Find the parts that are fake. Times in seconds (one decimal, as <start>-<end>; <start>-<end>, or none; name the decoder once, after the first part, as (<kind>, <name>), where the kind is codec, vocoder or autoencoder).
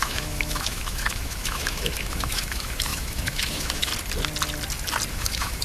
0.0-3.9 (autoencoder, DAC-VAE); 5.1-5.6